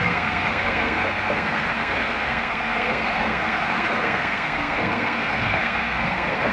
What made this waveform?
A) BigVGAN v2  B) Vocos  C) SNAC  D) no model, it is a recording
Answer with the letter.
C